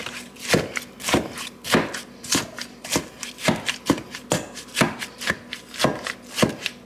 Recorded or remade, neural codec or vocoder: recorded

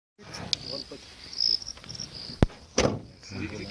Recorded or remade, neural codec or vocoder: recorded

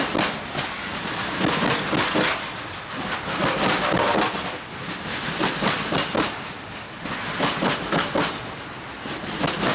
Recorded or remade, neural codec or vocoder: recorded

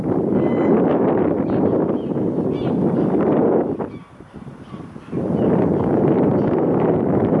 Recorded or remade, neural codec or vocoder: recorded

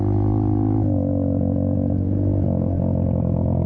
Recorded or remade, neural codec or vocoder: recorded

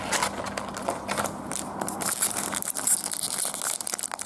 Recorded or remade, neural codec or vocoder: recorded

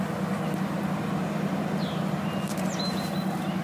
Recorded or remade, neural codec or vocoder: recorded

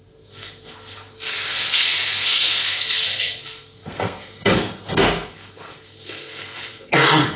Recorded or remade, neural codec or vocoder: remade, codec, SNAC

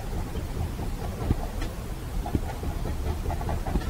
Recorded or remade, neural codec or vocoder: recorded